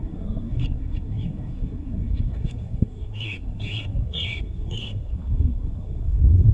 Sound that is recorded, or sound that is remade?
remade